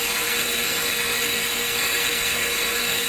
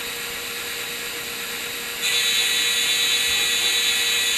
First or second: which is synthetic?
first